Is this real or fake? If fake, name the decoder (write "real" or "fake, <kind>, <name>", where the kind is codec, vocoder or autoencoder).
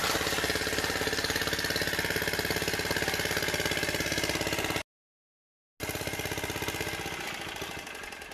real